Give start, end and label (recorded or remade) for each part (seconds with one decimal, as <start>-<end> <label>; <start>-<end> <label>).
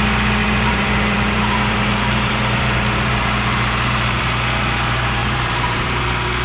0.0-0.4 recorded; 0.4-4.2 remade; 4.2-5.2 recorded; 5.2-6.0 remade; 6.0-6.4 recorded